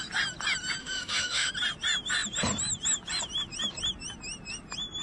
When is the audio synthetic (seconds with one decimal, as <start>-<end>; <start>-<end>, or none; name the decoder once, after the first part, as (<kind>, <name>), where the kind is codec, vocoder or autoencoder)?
0.8-1.5 (autoencoder, DAC-VAE)